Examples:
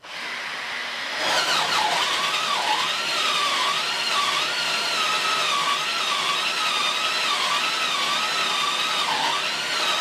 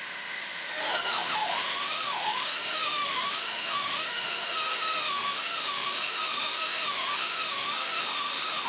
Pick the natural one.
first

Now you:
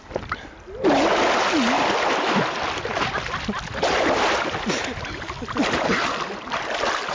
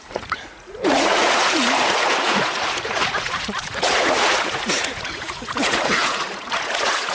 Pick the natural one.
first